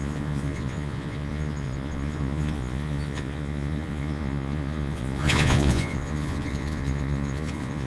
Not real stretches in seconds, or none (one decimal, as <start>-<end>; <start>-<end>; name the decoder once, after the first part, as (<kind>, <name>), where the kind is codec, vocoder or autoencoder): 0.0-7.9 (vocoder, Vocos)